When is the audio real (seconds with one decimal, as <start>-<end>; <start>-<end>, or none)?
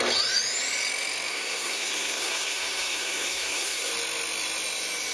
0.0-1.3; 3.9-5.1